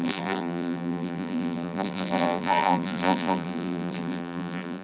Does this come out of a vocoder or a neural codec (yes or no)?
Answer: yes